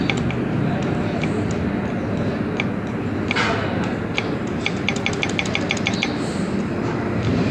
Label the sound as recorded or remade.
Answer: recorded